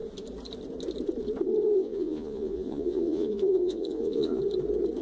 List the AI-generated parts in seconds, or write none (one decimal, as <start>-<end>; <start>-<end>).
1.8-4.4